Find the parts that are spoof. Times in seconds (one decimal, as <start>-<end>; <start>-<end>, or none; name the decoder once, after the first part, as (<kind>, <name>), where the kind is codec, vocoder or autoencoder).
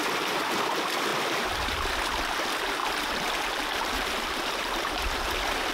1.1-2.0 (vocoder, BigVGAN v2); 2.8-5.7